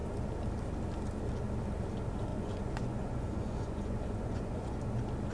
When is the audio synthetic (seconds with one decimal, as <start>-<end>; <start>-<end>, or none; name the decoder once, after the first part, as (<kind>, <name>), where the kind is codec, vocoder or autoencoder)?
2.3-4.8 (vocoder, Vocos)